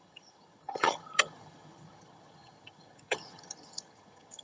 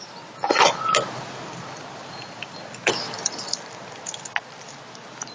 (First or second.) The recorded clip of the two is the second